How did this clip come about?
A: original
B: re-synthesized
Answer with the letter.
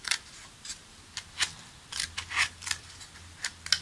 A